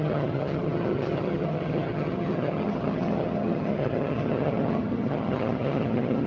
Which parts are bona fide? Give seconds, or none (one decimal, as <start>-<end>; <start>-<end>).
none